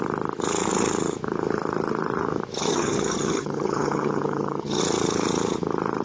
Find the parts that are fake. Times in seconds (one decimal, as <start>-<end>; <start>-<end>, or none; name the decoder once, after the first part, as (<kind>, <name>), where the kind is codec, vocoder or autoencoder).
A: 2.6-4.8 (vocoder, HiFi-GAN)